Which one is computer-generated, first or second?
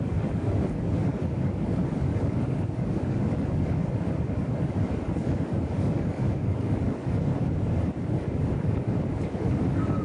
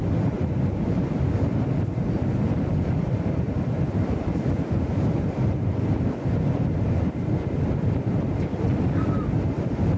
first